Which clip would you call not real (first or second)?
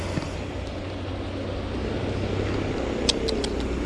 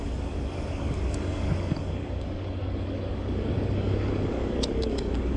second